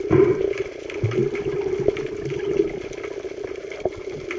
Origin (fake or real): real